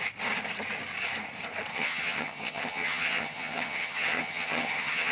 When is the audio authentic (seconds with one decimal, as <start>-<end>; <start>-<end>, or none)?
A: 0.0-1.7